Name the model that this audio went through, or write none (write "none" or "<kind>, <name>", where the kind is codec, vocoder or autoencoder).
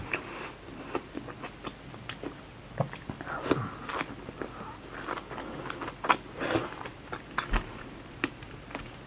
none